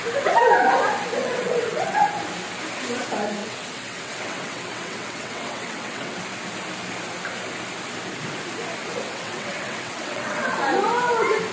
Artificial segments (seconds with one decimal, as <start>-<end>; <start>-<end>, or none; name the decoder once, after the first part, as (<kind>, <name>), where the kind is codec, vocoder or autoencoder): 1.2-2.1 (vocoder, WaveNeXt); 3.4-6.2; 8.8-10.6